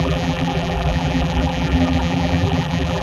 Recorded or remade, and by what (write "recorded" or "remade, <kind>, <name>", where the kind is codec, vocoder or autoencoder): remade, vocoder, BigVGAN v2